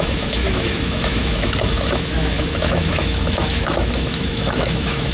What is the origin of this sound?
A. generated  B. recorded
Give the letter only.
A